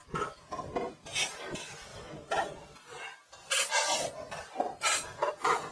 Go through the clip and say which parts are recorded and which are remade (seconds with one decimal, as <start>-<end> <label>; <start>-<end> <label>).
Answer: 0.0-5.7 recorded